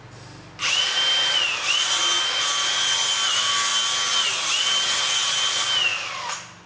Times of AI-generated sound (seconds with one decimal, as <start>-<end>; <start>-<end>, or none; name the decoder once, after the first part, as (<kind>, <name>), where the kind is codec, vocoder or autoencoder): none